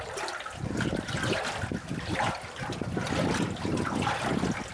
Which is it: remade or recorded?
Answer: recorded